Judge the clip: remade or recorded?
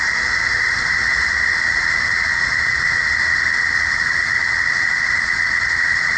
recorded